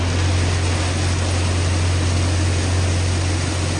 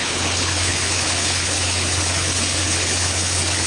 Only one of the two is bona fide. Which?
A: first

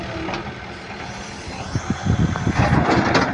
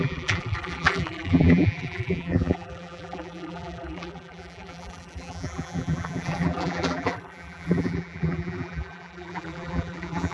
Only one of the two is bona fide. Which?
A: first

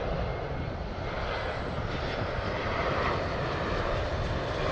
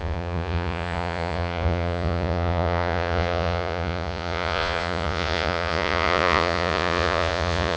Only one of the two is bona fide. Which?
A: first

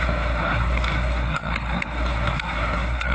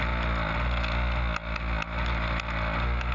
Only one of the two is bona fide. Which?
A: second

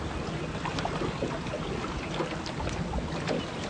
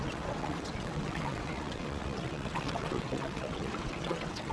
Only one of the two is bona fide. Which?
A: first